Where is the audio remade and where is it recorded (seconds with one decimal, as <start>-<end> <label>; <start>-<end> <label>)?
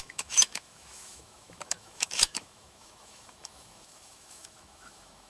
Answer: 0.0-5.3 remade